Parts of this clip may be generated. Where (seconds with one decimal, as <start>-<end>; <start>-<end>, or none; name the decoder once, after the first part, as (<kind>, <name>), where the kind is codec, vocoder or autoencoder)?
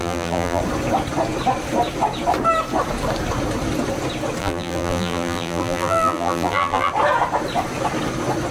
0.0-0.6 (vocoder, BigVGAN v2); 4.4-6.9